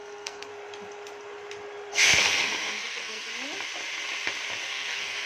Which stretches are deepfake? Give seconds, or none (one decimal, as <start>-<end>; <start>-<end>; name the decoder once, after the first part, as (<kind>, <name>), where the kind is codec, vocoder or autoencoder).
0.0-0.5 (codec, SNAC); 1.9-3.3; 4.7-5.3